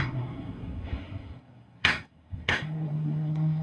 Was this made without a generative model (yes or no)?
no